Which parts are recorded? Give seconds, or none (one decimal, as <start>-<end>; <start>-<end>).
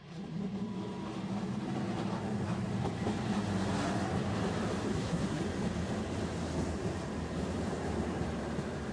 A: 0.0-4.9; 5.4-8.9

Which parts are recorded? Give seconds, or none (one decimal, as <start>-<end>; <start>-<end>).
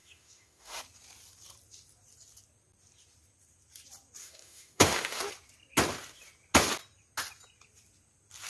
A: 0.8-4.2; 5.2-8.5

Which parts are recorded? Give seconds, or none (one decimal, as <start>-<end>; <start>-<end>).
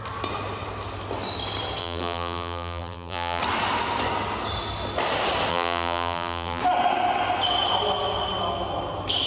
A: 0.0-1.8; 3.4-5.5; 6.6-9.3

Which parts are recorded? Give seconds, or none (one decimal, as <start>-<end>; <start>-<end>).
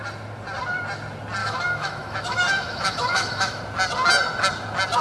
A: 0.0-1.4; 3.6-5.0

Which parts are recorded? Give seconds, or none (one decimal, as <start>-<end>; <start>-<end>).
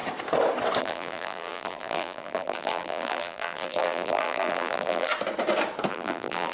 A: 0.0-0.8; 5.1-5.9